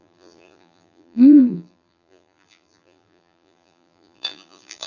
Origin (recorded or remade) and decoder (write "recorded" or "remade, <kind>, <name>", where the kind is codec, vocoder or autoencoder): remade, vocoder, BigVGAN v2